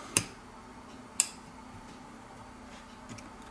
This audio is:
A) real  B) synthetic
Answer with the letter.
A